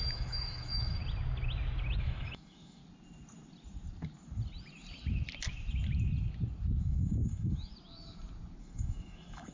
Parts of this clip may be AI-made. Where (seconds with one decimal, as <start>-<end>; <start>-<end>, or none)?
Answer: 0.0-1.0; 2.0-2.8; 6.8-7.7; 8.6-9.5